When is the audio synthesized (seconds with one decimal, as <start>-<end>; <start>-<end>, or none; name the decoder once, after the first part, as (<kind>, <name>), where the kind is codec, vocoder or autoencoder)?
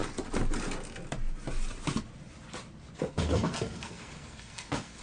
3.0-5.0 (codec, SNAC)